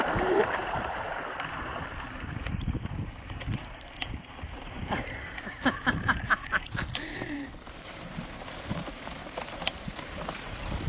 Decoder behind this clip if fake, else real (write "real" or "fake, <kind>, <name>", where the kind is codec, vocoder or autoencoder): fake, vocoder, BigVGAN v2